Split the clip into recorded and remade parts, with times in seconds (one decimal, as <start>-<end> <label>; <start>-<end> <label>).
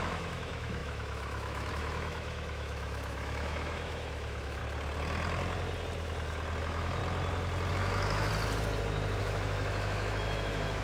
0.0-4.6 remade; 4.6-6.6 recorded; 6.6-7.0 remade; 7.0-7.7 recorded; 7.7-8.3 remade; 8.3-9.2 recorded; 9.2-10.8 remade